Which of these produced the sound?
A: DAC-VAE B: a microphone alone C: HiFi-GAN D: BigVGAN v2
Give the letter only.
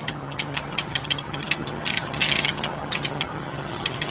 C